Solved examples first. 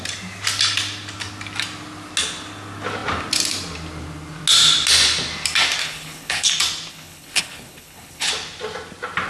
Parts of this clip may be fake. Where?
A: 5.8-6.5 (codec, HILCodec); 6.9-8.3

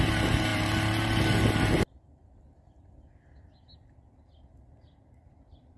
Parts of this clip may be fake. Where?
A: none

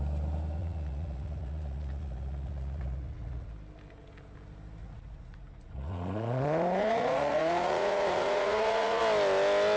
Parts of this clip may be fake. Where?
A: 0.6-3.5 (vocoder, Vocos); 4.8-9.0

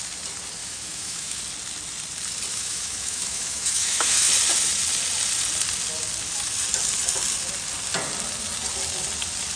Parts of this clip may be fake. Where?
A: 0.6-1.4 (autoencoder, DAC-VAE); 2.5-4.3

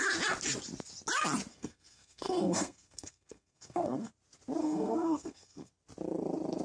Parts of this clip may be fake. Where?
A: 1.5-4.1 (codec, SNAC); 4.6-5.7

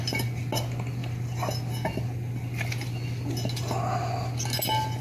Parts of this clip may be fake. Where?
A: none

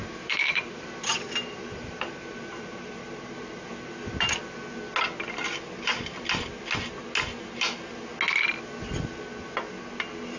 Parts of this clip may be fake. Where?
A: 0.0-4.4 (vocoder, BigVGAN v2)